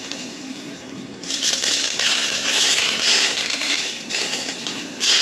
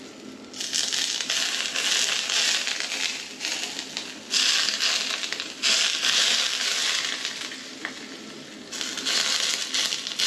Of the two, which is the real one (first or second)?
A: second